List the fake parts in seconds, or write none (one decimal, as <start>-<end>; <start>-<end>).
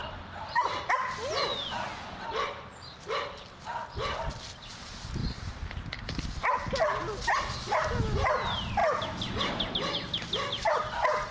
0.0-0.8; 5.2-6.2